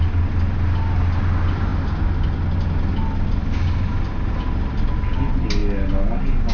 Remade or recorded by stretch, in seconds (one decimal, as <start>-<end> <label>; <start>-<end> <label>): 0.0-6.5 recorded